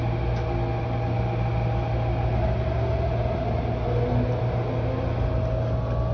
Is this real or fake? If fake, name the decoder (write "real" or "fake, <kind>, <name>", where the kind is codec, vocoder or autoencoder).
real